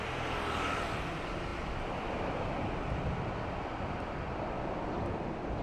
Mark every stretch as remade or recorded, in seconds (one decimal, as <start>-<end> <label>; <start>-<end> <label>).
0.0-5.6 remade